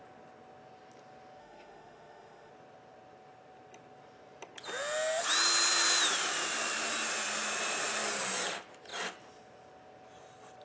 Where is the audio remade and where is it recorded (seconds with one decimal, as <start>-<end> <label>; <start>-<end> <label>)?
0.0-1.4 recorded; 1.4-2.5 remade; 2.5-10.6 recorded